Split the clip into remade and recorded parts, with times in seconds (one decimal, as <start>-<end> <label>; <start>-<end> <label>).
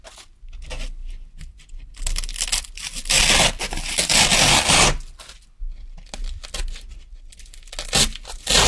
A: 0.0-8.7 recorded